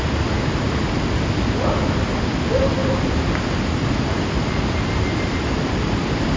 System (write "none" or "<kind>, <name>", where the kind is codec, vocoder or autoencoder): none